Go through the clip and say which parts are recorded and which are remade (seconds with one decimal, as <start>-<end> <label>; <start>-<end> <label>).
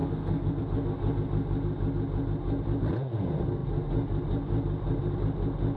0.0-0.6 remade; 0.6-5.8 recorded